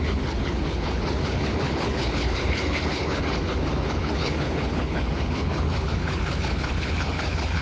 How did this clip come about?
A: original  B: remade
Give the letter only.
B